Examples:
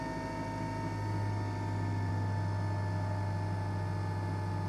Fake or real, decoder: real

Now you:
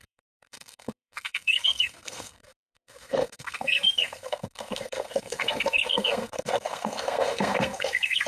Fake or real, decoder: fake, codec, SNAC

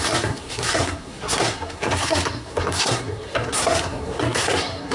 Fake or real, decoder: fake, codec, SNAC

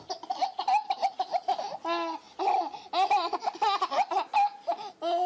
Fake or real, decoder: real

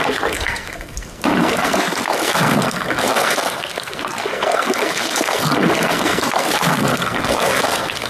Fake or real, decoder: fake, codec, SNAC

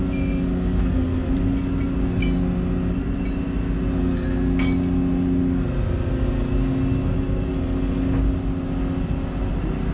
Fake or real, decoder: real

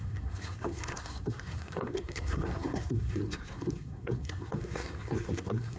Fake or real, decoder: fake, codec, SNAC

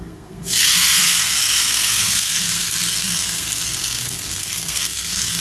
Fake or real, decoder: fake, codec, SNAC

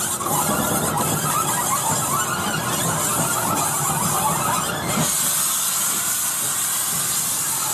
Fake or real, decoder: real